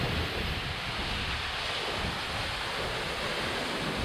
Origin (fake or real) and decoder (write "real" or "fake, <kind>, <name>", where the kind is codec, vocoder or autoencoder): real